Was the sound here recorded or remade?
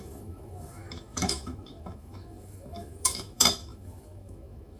remade